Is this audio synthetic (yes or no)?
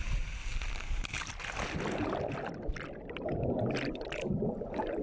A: no